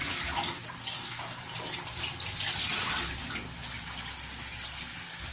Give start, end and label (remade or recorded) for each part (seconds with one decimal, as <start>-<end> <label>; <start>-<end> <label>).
0.0-5.3 recorded